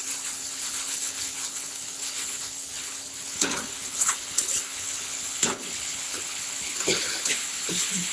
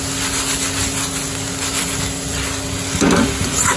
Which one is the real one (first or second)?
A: second